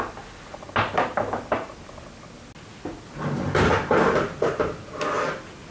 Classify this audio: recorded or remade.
recorded